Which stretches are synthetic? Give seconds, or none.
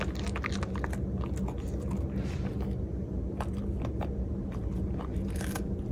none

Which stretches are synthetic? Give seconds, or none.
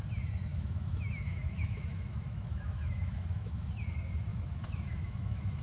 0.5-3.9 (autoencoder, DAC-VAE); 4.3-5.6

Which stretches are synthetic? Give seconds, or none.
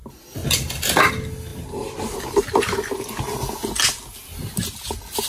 none